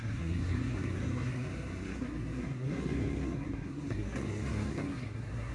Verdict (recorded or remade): remade